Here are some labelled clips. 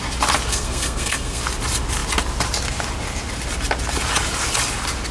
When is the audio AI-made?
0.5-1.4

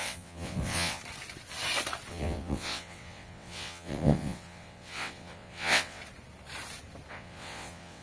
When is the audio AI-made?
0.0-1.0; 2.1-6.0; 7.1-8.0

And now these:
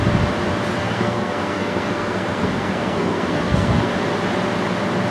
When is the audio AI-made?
0.8-3.9

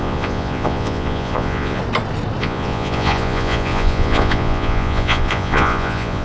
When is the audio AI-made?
0.0-1.8; 2.4-6.2